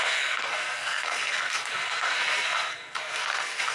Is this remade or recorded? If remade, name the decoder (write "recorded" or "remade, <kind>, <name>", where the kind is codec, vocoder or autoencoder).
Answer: remade, codec, SNAC